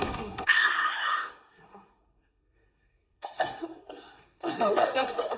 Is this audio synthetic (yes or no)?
yes